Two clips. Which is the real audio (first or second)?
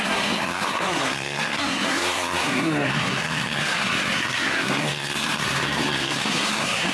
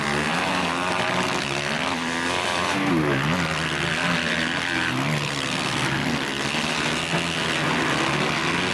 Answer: second